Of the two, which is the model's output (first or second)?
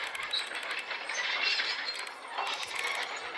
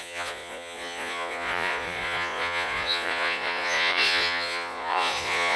second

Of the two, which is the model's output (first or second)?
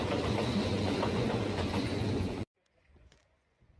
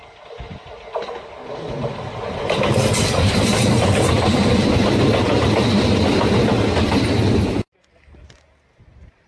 first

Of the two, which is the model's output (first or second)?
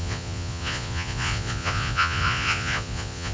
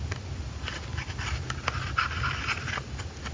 first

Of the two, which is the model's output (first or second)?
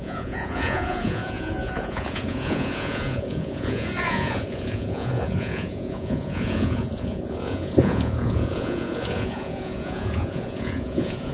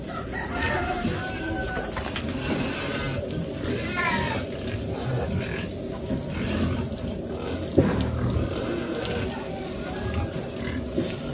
first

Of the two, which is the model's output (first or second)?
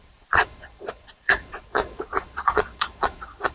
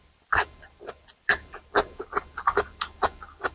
first